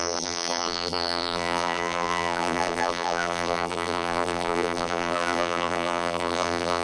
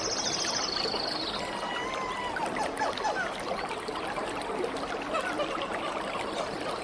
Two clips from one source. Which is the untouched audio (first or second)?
second